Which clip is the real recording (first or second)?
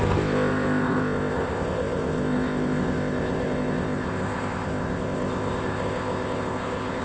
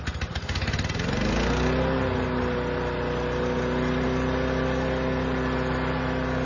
second